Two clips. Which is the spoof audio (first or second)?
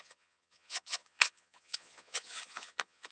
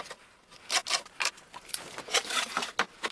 first